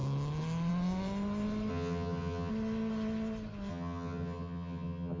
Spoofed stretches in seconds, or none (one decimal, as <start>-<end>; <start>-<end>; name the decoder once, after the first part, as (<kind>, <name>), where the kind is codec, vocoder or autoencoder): 1.7-2.5 (vocoder, HiFi-GAN); 3.7-5.2